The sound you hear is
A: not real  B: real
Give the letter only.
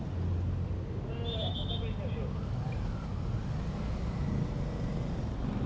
B